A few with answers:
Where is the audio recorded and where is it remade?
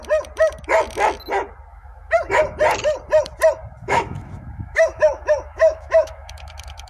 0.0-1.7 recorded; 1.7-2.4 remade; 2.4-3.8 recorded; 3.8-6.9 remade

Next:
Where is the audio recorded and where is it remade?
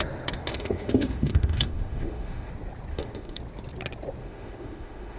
0.0-0.5 recorded; 0.5-2.5 remade; 2.5-2.9 recorded; 2.9-3.4 remade; 3.4-4.2 recorded; 4.2-5.2 remade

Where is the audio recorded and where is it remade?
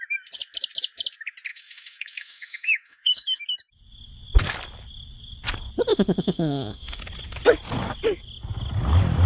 0.0-1.5 recorded; 1.5-3.4 remade; 3.4-5.9 recorded; 5.9-7.0 remade; 7.0-9.3 recorded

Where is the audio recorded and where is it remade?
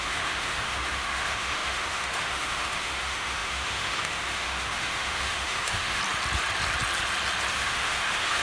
0.0-6.0 remade; 6.0-7.5 recorded; 7.5-8.4 remade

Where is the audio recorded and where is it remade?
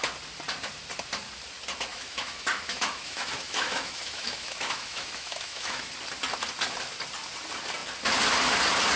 0.0-1.9 recorded; 1.9-5.9 remade; 5.9-9.0 recorded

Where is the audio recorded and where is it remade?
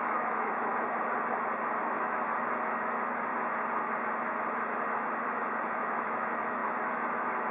0.0-0.7 remade; 0.7-1.8 recorded; 1.8-3.3 remade; 3.3-4.9 recorded; 4.9-7.5 remade